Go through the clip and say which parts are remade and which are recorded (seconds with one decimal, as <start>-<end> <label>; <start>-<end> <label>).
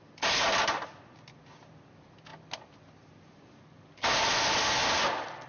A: 0.0-5.5 recorded